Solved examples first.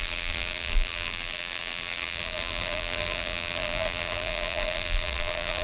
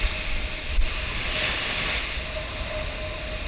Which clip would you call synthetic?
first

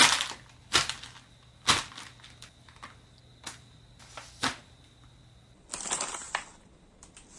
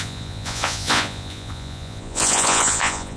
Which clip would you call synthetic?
second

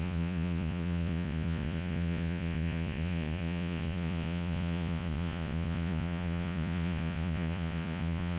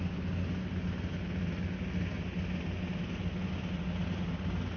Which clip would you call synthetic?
first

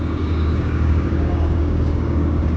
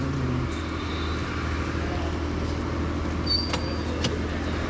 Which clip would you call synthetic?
first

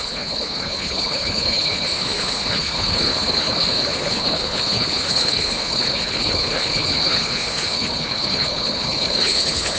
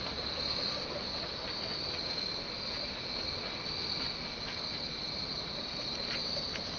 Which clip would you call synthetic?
first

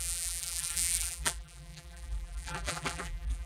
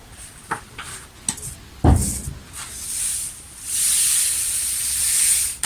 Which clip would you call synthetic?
first